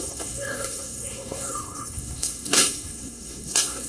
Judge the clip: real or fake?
fake